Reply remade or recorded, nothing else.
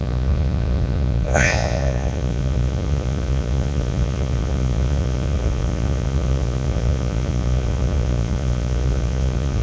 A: remade